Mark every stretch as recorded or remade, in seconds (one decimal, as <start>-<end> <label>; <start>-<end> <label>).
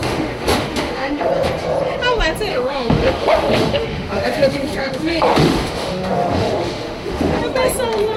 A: 0.0-1.3 remade; 1.3-2.5 recorded; 2.5-7.4 remade; 7.4-8.2 recorded